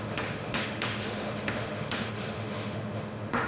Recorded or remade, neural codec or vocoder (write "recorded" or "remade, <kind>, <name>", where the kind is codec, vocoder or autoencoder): remade, autoencoder, DAC-VAE